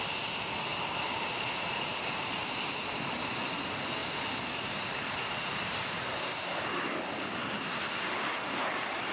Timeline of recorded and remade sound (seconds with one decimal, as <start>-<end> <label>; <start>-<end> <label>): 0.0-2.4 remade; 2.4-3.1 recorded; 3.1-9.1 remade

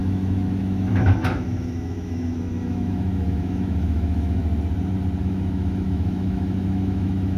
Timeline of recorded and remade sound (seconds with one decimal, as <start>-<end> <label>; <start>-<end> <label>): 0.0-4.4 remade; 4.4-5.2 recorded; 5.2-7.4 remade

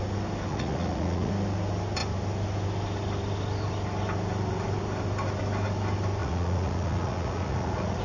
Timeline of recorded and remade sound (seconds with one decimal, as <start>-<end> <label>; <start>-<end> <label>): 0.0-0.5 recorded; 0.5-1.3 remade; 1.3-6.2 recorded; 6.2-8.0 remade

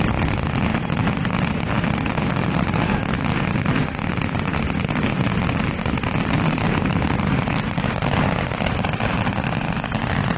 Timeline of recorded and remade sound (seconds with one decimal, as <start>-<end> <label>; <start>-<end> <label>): 0.0-10.4 recorded

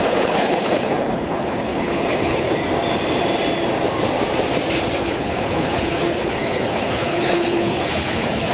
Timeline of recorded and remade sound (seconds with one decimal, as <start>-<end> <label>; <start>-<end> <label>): 0.0-2.6 remade; 2.6-5.0 recorded; 5.0-8.5 remade